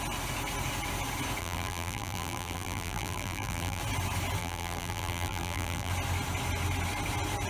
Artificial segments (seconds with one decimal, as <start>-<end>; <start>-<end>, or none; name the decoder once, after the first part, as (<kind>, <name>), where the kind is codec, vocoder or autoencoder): 1.4-3.8 (vocoder, BigVGAN v2); 4.4-5.9